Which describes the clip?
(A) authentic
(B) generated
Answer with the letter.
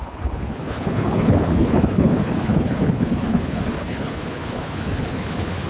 B